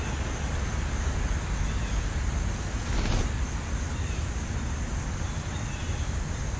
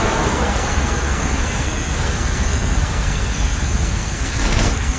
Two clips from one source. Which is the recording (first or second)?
first